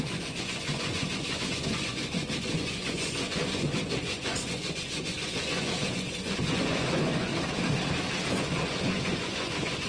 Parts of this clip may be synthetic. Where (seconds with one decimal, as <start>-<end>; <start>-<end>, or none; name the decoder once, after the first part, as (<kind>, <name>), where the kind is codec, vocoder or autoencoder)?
0.0-7.3 (vocoder, Vocos); 8.3-9.9